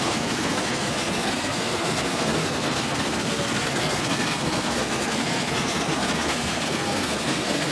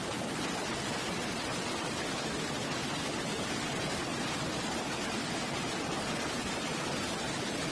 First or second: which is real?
second